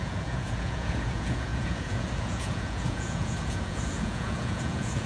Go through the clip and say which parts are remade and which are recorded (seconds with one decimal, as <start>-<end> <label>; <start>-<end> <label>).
0.0-5.1 remade